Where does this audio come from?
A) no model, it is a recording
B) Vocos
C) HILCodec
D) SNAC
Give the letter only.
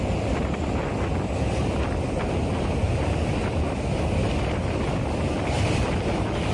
A